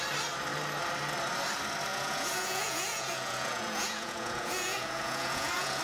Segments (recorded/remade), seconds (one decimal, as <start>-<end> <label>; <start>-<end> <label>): 0.0-1.9 recorded; 1.9-5.8 remade